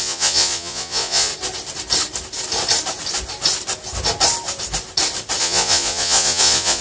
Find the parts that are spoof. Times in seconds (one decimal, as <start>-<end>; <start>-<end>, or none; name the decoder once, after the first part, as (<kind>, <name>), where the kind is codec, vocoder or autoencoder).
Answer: 0.0-1.3 (vocoder, Vocos); 5.4-6.8